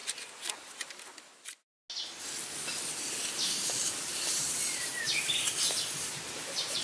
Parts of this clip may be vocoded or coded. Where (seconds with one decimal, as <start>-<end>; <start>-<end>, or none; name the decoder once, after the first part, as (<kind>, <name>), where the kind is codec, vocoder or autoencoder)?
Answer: 3.3-4.9 (vocoder, BigVGAN v2); 6.0-6.8